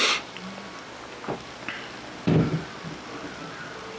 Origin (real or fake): real